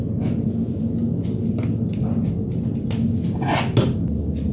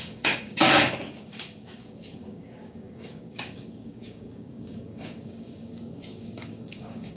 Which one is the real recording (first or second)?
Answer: first